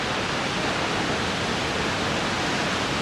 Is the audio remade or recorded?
recorded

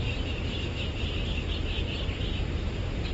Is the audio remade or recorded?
recorded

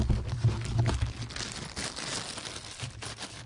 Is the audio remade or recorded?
recorded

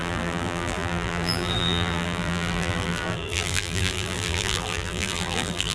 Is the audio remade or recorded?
remade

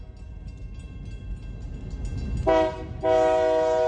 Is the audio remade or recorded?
recorded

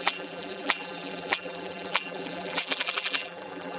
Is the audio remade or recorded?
remade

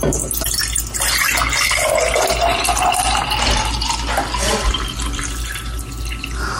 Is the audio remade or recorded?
recorded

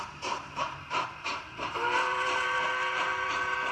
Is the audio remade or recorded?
remade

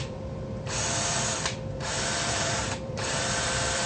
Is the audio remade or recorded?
remade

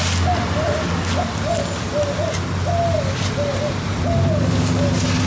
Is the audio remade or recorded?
recorded